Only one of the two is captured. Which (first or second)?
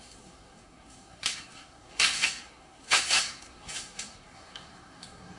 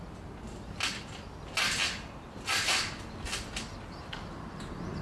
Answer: second